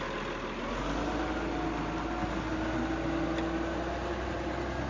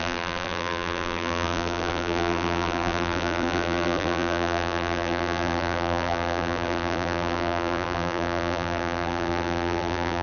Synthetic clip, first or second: second